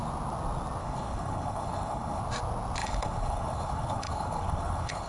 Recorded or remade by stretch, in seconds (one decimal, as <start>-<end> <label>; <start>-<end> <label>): 0.0-0.8 recorded; 0.8-2.2 remade; 2.2-2.8 recorded; 2.8-5.1 remade